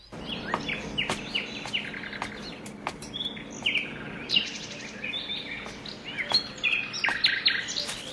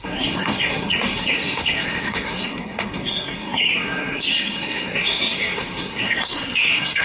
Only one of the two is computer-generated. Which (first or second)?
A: second